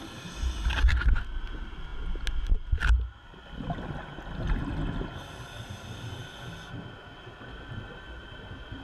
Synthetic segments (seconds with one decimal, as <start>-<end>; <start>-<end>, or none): none